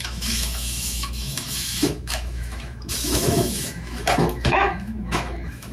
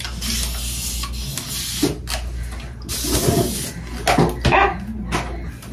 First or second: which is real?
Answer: second